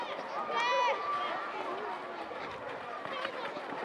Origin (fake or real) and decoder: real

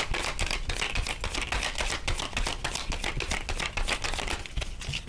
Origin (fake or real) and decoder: real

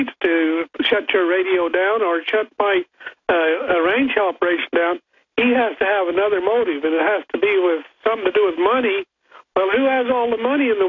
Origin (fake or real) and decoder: real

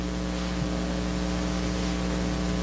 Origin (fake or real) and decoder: real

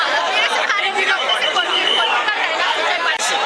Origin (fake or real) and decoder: fake, vocoder, BigVGAN v2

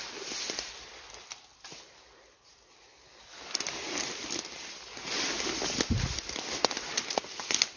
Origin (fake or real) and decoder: real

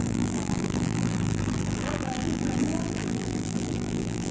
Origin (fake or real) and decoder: fake, vocoder, BigVGAN v2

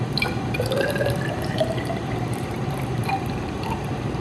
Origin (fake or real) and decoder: fake, vocoder, BigVGAN v2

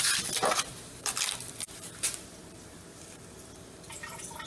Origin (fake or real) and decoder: fake, vocoder, BigVGAN v2